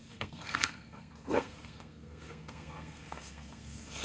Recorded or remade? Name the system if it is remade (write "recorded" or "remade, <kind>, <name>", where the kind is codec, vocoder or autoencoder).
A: remade, codec, SNAC